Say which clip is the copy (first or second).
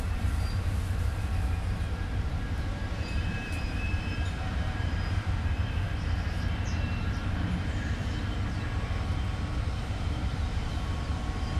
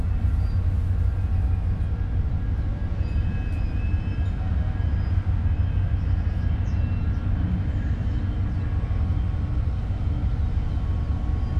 first